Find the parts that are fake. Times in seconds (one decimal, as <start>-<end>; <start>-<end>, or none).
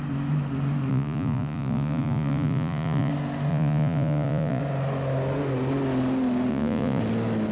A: 0.9-3.1; 3.5-4.6; 6.5-7.0